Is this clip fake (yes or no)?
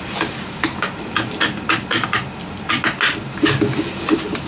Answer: no